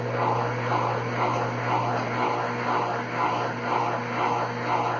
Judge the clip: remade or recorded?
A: recorded